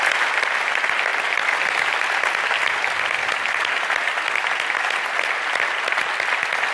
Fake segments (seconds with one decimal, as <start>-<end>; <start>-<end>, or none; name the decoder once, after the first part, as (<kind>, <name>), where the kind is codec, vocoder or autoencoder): 1.1-1.6 (vocoder, BigVGAN v2)

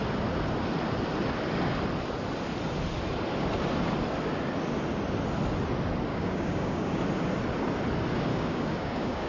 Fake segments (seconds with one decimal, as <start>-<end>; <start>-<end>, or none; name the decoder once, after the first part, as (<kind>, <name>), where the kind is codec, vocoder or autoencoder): 6.1-7.0 (codec, DAC); 8.3-9.3

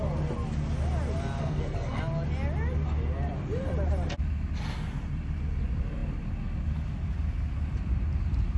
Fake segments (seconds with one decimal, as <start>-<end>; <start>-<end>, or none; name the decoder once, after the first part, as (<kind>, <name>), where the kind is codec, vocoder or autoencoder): 1.4-2.0 (codec, SNAC)

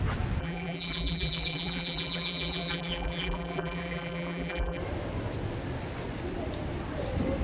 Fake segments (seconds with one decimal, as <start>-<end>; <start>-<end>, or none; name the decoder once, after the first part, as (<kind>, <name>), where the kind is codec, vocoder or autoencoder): 0.4-4.8 (vocoder, BigVGAN v2)

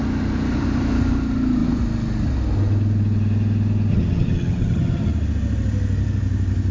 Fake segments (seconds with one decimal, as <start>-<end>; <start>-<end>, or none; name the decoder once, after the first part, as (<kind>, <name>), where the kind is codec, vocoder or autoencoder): 3.9-5.1 (vocoder, HiFi-GAN)

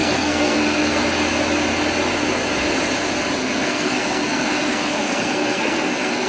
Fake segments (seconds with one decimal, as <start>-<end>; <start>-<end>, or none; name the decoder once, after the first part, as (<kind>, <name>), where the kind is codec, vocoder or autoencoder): 0.0-1.0 (codec, SNAC); 3.4-6.3